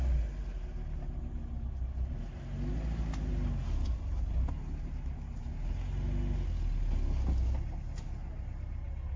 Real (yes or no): yes